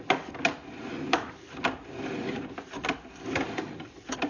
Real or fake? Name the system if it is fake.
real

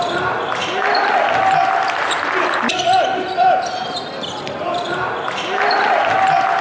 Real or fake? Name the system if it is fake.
real